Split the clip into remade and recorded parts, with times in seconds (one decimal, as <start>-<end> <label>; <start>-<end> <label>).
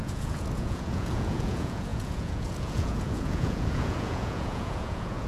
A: 0.0-5.3 remade